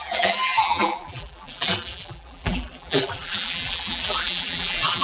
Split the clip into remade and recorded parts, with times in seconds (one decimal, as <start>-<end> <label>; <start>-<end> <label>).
0.0-5.0 remade

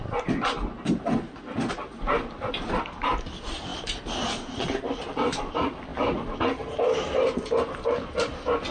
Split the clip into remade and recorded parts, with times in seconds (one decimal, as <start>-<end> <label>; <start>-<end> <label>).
0.0-8.7 recorded

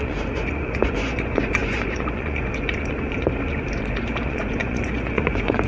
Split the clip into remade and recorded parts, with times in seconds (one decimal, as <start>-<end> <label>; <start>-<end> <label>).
0.0-5.7 remade

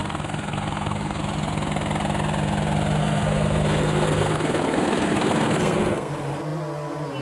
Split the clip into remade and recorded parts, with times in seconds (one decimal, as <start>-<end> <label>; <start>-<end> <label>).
0.0-1.2 remade; 1.2-3.0 recorded; 3.0-6.1 remade; 6.1-7.2 recorded

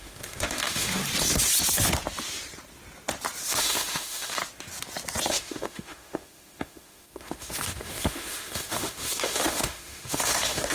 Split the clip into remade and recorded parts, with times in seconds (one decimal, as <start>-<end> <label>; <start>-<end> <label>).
0.0-1.0 remade; 1.0-3.5 recorded; 3.5-4.4 remade; 4.4-5.3 recorded; 5.3-10.7 remade